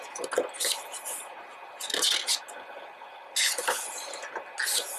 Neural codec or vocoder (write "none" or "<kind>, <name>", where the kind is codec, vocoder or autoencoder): none